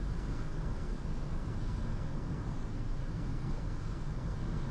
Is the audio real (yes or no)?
no